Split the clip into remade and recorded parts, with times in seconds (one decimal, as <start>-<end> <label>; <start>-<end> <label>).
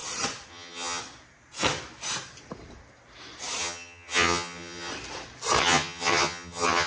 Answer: 0.0-0.5 recorded; 0.5-1.0 remade; 1.0-3.6 recorded; 3.6-4.9 remade; 4.9-5.6 recorded; 5.6-6.9 remade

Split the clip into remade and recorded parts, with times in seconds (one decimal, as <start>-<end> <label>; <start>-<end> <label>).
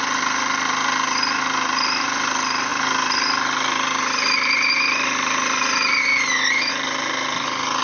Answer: 0.0-7.8 recorded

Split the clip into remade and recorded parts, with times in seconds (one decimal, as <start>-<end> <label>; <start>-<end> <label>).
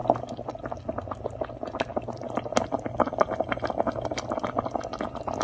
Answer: 0.0-5.4 recorded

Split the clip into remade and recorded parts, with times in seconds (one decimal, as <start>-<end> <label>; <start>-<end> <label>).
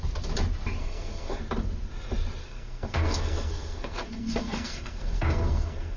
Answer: 0.0-0.8 recorded; 0.8-1.4 remade; 1.4-2.4 recorded; 2.4-6.0 remade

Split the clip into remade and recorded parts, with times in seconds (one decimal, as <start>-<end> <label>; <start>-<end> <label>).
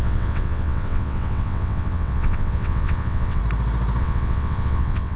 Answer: 0.0-3.4 remade; 3.4-4.0 recorded; 4.0-5.2 remade